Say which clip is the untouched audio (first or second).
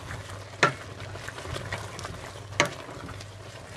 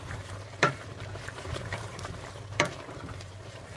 first